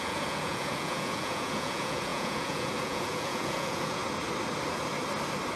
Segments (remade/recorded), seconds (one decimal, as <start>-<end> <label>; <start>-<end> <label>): 0.0-4.0 remade; 4.0-5.6 recorded